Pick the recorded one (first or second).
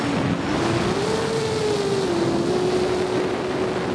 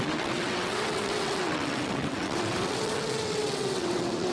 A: first